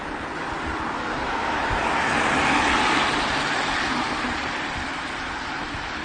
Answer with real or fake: real